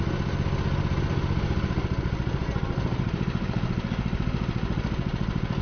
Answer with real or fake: real